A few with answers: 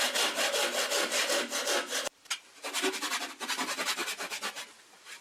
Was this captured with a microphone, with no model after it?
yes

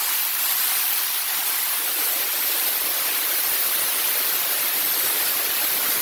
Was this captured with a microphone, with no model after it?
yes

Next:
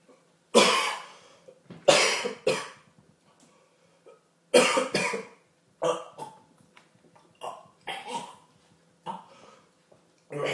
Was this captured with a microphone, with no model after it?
yes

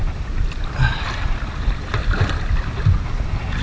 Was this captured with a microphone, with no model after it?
yes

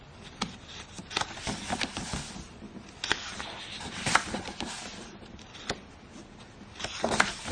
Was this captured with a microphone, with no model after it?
yes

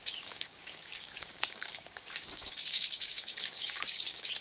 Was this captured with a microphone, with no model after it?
no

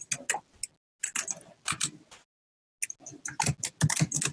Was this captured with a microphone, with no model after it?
yes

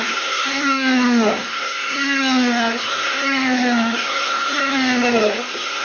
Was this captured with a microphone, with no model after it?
no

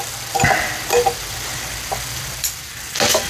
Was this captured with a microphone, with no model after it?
yes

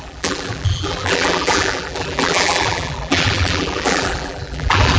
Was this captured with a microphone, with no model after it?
no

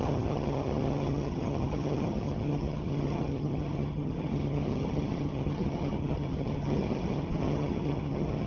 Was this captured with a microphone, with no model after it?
no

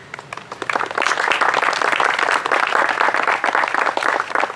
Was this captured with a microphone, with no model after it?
yes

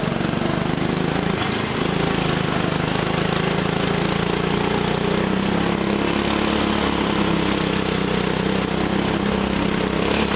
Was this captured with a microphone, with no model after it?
yes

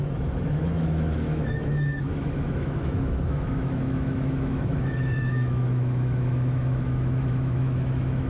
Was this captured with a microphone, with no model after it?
no